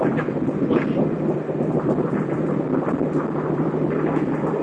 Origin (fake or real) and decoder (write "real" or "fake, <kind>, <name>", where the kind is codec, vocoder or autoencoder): fake, vocoder, BigVGAN v2